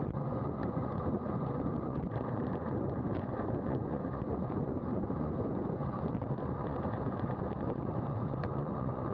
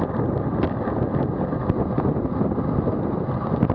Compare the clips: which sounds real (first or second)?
second